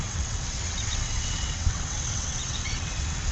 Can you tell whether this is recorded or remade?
remade